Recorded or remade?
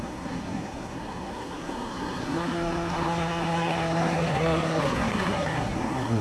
remade